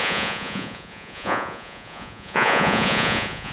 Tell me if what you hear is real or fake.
fake